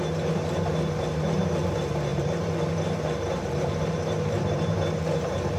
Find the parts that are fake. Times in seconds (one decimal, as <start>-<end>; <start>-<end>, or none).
0.0-5.6